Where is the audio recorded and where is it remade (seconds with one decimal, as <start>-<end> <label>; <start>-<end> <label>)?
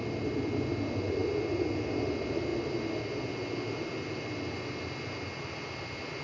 0.0-6.2 recorded